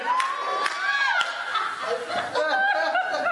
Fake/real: real